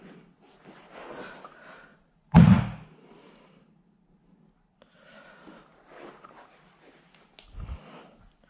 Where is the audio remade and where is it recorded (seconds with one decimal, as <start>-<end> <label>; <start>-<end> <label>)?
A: 0.0-1.9 recorded; 1.9-2.6 remade; 2.6-8.5 recorded

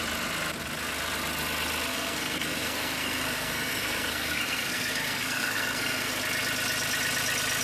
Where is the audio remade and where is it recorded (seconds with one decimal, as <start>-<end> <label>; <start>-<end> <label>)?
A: 0.0-1.9 recorded; 1.9-6.2 remade; 6.2-7.6 recorded

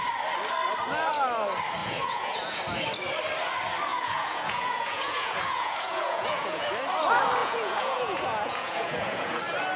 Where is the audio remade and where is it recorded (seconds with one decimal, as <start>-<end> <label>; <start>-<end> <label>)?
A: 0.0-1.8 recorded; 1.8-2.6 remade; 2.6-3.9 recorded; 3.9-6.7 remade; 6.7-7.4 recorded; 7.4-9.4 remade; 9.4-9.8 recorded